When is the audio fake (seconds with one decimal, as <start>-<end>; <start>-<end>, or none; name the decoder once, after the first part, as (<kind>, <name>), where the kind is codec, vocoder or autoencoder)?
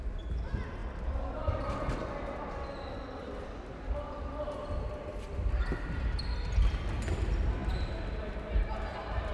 none